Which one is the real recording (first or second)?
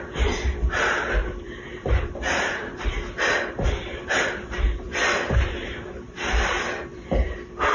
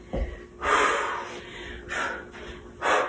second